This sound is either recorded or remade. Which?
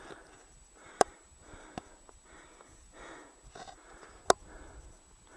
recorded